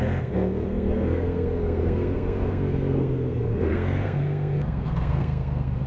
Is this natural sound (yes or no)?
no